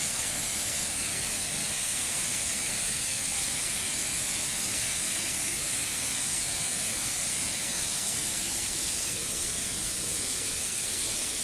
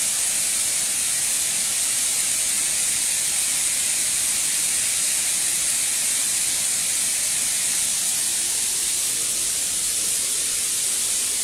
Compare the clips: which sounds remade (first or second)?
first